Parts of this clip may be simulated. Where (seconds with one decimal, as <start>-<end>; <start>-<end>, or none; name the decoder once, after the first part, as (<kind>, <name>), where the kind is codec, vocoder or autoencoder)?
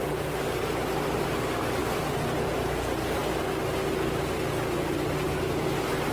none